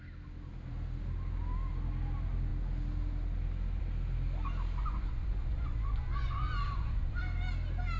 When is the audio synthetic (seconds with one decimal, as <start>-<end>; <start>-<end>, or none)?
4.8-7.2